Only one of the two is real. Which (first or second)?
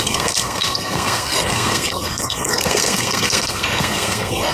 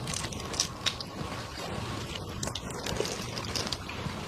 second